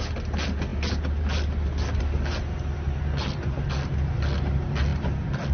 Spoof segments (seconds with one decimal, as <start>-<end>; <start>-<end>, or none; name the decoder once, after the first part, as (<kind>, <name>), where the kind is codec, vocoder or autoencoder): none

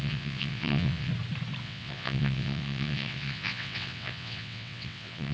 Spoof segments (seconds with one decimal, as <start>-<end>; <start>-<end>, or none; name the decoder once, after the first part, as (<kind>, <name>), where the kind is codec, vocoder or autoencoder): 0.0-1.1 (vocoder, WaveNeXt); 1.6-5.3

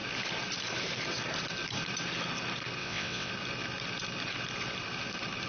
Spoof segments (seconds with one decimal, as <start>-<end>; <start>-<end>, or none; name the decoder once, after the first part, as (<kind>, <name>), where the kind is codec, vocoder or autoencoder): 2.8-3.3 (vocoder, WaveNeXt)